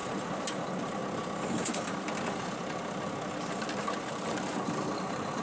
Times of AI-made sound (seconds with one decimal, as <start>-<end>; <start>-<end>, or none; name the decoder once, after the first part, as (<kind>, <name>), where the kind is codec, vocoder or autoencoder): 0.0-1.0 (vocoder, BigVGAN v2); 3.8-5.4